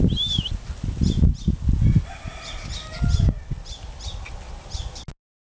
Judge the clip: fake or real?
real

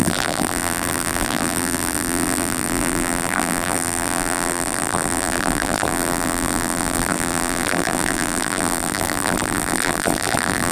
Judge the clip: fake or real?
fake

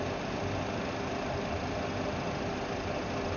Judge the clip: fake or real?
real